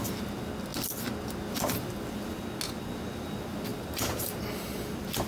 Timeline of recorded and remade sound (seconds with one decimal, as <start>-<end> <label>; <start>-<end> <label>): 0.0-3.7 recorded; 3.7-4.4 remade; 4.4-5.3 recorded